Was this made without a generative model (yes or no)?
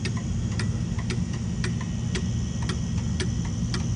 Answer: yes